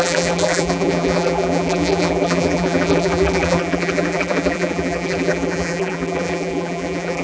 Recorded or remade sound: remade